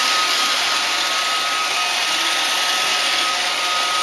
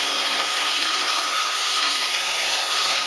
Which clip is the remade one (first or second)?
second